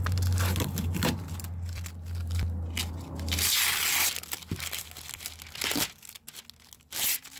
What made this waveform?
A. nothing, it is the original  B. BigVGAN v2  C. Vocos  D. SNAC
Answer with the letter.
A